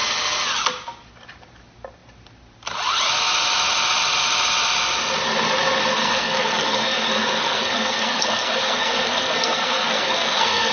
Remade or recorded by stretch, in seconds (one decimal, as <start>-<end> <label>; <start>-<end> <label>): 0.0-5.9 recorded; 5.9-10.7 remade